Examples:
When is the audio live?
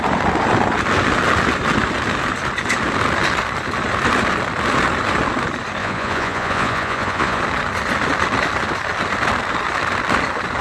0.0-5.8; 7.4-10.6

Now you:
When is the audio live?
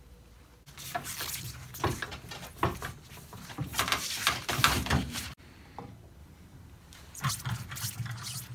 0.0-3.7; 5.6-6.2; 7.3-8.5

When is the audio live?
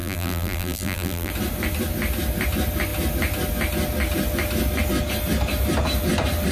1.3-6.5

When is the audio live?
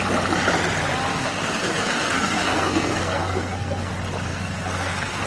0.0-1.1; 3.9-4.3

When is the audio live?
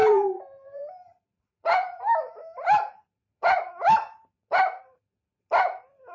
3.7-6.1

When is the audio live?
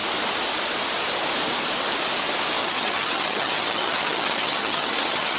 0.0-2.6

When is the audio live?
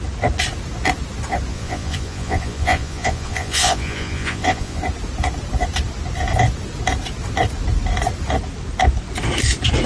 0.0-1.5; 4.8-9.9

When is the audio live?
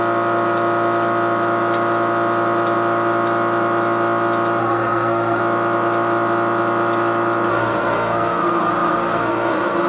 0.0-4.6; 5.4-7.5